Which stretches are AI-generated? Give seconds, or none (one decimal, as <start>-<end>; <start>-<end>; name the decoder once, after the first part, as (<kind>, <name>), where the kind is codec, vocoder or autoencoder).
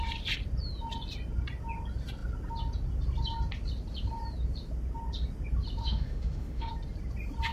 5.8-6.7 (autoencoder, DAC-VAE)